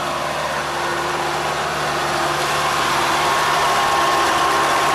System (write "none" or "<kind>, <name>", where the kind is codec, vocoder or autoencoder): vocoder, BigVGAN v2